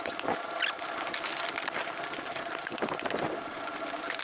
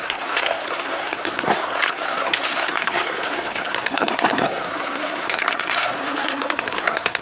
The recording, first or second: first